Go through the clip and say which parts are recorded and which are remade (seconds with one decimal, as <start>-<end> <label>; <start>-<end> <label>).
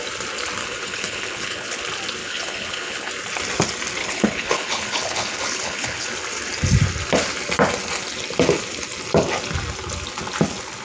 0.0-0.6 recorded; 0.6-1.8 remade; 1.8-2.2 recorded; 2.2-3.1 remade; 3.1-4.0 recorded; 4.0-6.1 remade; 6.1-10.8 recorded